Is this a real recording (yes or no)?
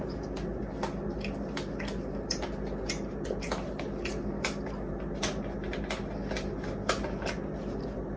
yes